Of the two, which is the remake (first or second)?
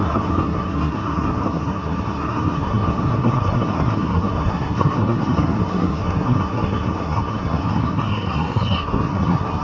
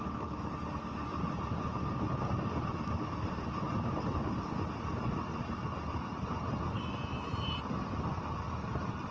first